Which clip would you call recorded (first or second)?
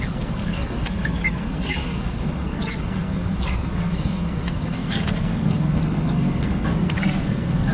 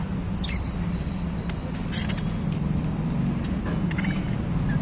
second